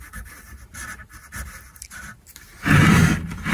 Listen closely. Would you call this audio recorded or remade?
recorded